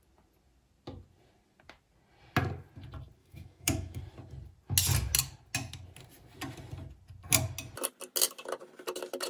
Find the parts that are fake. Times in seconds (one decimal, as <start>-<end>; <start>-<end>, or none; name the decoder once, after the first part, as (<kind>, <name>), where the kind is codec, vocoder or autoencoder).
3.2-4.0 (autoencoder, DAC-VAE)